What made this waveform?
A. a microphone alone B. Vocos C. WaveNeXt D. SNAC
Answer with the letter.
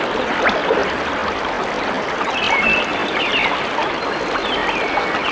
A